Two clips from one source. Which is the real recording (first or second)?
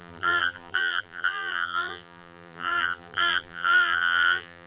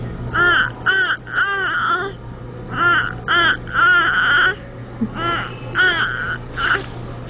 second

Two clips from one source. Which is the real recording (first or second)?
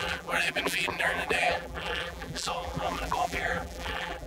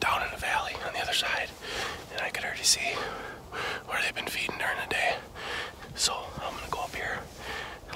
second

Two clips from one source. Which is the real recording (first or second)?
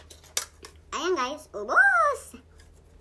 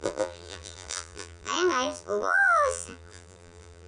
first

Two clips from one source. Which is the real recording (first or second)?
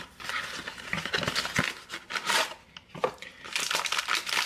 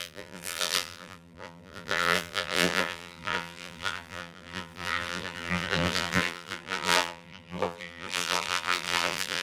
first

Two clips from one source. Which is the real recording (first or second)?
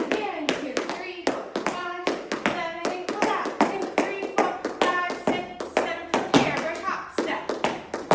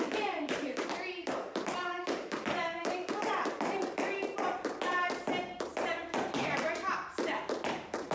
first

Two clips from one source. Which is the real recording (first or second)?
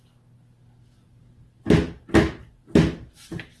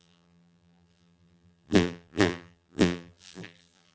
first